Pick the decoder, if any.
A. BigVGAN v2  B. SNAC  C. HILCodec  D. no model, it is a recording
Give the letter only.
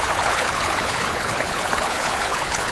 C